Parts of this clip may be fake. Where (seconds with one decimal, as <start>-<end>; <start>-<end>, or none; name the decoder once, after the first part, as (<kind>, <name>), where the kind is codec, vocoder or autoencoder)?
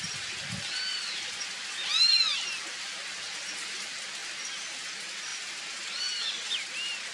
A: none